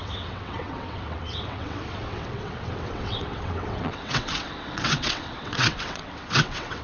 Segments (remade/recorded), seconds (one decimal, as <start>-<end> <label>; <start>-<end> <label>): 0.0-6.8 remade